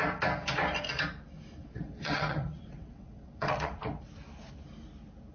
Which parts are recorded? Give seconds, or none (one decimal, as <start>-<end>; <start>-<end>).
0.0-1.6; 4.0-5.3